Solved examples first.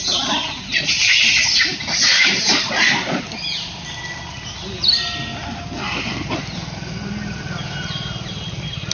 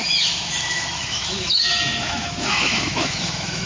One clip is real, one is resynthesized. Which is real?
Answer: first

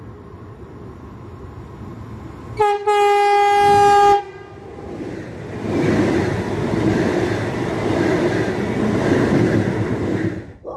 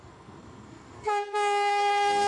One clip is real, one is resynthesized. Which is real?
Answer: first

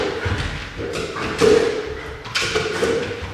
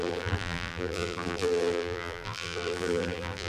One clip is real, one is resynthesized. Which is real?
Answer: first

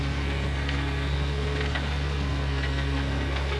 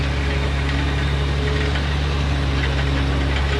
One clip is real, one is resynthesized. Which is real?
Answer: second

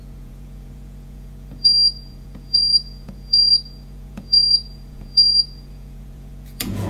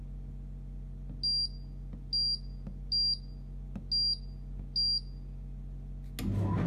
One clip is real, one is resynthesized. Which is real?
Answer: second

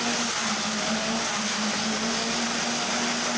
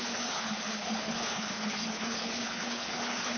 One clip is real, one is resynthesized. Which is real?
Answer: first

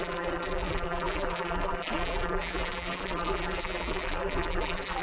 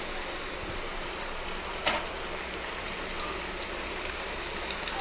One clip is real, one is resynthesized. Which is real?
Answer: second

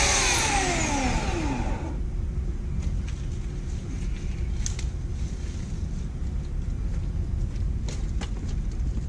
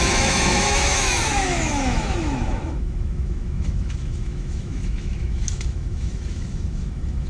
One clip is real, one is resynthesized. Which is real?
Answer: first